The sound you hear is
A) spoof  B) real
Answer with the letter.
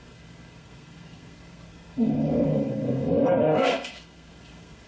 A